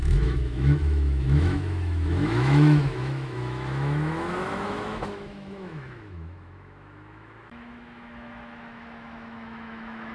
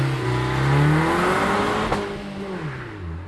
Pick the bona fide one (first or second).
second